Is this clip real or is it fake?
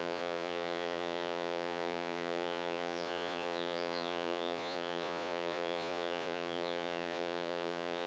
fake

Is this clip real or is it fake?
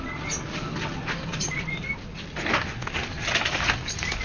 real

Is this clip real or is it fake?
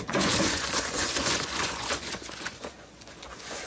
fake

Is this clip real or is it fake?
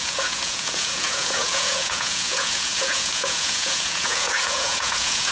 fake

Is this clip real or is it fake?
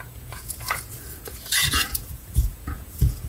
fake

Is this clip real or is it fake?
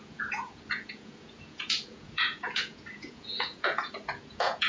fake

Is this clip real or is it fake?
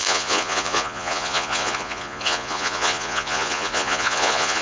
fake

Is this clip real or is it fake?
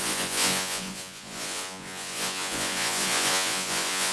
fake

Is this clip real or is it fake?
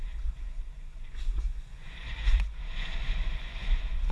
fake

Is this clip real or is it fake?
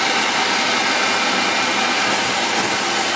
real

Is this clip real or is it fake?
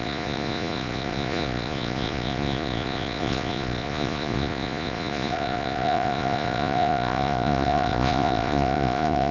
fake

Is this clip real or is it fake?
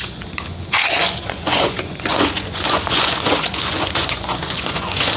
fake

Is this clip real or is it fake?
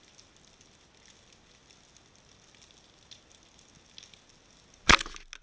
real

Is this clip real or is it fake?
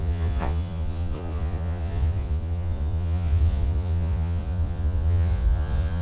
fake